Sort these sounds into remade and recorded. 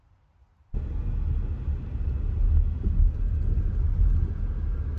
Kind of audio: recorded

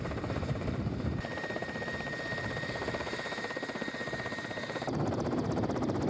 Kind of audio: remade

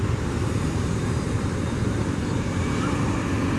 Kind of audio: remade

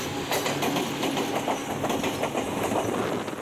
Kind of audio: recorded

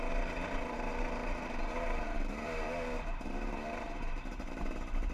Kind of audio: remade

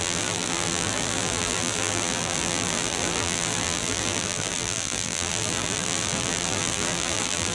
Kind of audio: remade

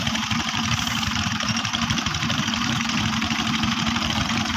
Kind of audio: remade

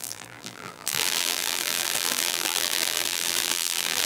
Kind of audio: remade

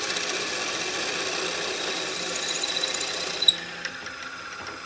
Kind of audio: recorded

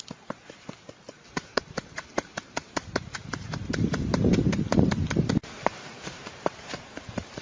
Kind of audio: remade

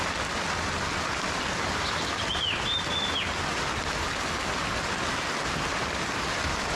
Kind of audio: recorded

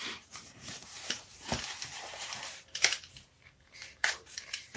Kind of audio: remade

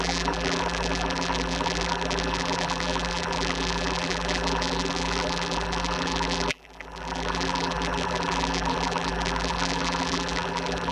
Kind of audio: remade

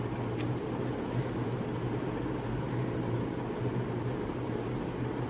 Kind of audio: recorded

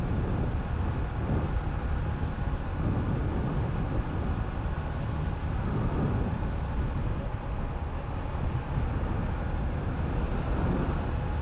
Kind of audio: recorded